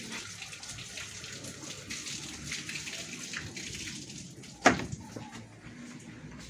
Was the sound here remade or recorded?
recorded